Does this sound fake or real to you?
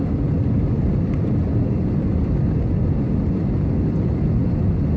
fake